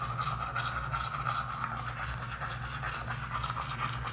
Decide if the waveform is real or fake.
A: real